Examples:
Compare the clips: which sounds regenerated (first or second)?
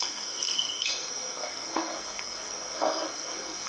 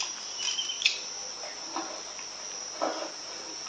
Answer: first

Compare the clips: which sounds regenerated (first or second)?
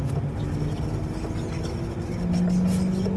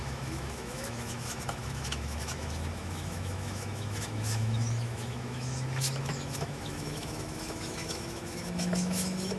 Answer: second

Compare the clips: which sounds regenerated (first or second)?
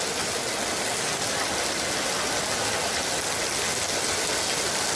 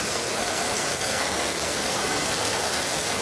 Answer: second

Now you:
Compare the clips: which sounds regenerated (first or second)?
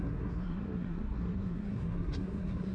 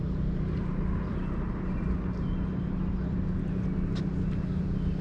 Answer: first